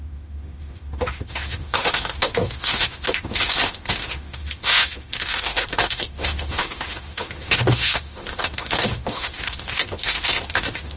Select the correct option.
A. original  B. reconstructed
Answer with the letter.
B